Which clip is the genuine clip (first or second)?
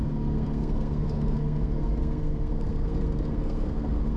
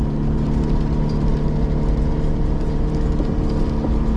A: second